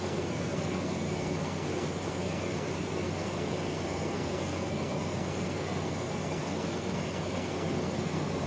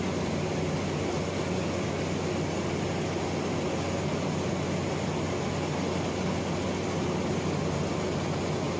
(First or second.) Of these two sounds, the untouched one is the second